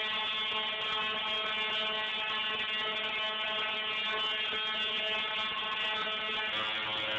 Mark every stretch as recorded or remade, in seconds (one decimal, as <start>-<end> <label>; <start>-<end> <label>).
0.0-7.2 recorded